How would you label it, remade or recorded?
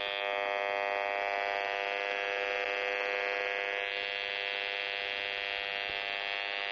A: recorded